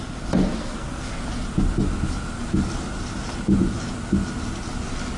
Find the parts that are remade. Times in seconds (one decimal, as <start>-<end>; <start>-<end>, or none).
0.6-1.1